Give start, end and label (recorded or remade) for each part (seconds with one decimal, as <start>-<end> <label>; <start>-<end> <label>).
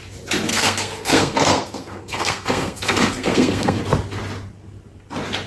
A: 0.0-0.5 recorded; 0.5-3.8 remade; 3.8-5.5 recorded